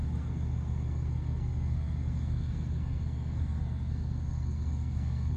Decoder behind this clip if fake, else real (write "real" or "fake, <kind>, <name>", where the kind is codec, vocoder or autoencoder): fake, codec, SNAC